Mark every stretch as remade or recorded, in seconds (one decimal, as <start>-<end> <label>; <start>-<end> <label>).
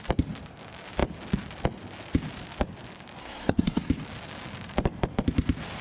0.0-3.2 recorded; 3.2-3.9 remade; 3.9-5.8 recorded